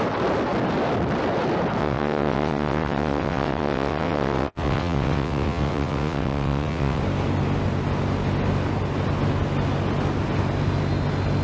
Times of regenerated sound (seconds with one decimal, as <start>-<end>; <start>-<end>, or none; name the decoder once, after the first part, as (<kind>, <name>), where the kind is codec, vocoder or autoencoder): 1.8-7.0 (vocoder, WaveNeXt)